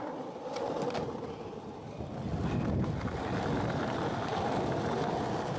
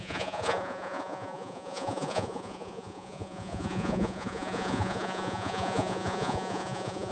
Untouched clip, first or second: first